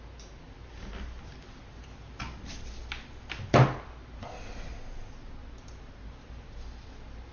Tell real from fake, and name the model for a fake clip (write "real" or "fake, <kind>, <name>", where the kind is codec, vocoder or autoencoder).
real